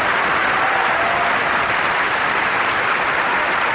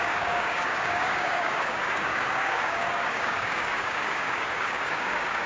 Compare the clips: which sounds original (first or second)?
first